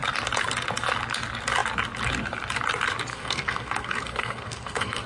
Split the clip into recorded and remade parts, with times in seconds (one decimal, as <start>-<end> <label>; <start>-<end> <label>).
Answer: 0.0-3.1 recorded; 3.1-5.1 remade